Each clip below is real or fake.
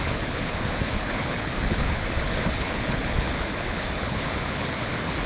fake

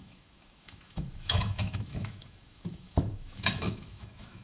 fake